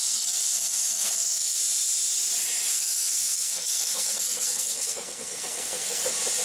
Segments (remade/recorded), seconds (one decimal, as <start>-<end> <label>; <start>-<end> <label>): 0.0-1.6 remade; 1.6-2.7 recorded; 2.7-6.0 remade; 6.0-6.4 recorded